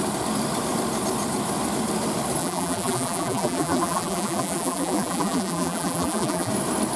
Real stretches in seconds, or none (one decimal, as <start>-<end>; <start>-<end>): 0.0-2.4; 6.5-7.0

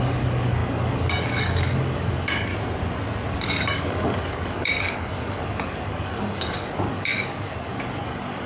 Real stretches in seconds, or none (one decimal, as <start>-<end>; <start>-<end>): 2.5-3.3

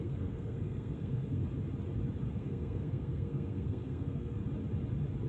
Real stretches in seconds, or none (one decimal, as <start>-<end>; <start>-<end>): 1.4-2.3; 4.4-5.3

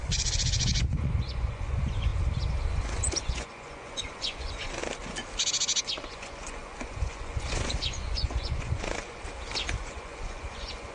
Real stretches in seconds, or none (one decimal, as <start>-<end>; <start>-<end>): 2.1-2.8; 4.8-5.8; 9.2-9.8

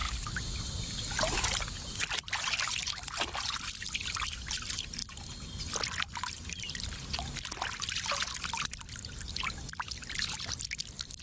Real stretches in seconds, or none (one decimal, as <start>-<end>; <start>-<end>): 0.0-11.2

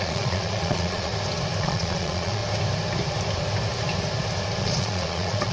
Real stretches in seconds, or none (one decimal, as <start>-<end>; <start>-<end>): 1.1-1.6; 2.4-4.6

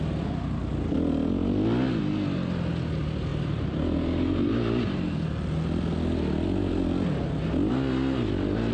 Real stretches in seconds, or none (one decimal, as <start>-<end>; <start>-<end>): 0.0-3.3; 5.3-8.7

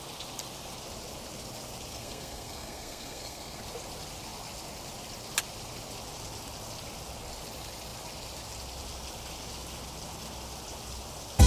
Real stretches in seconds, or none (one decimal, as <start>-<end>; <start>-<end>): 0.0-1.9; 3.6-11.5